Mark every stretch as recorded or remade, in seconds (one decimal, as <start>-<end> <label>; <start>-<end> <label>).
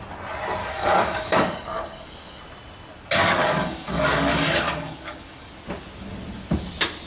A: 0.0-0.6 recorded; 0.6-2.4 remade; 2.4-3.2 recorded; 3.2-5.5 remade; 5.5-7.1 recorded